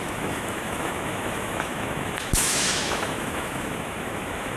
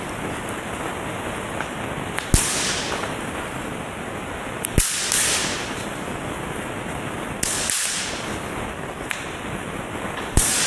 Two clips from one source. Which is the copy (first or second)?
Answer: first